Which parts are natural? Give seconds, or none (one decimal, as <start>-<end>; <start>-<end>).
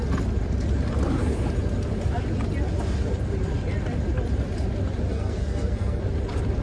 0.0-5.1; 6.0-6.6